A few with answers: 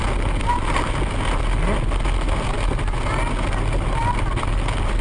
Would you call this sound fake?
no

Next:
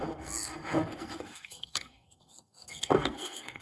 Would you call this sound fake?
yes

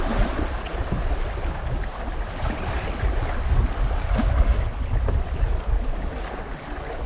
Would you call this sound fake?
no